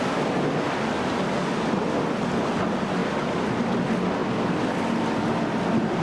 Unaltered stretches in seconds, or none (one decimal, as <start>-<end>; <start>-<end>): 0.0-6.0